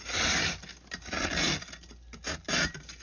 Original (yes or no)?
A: yes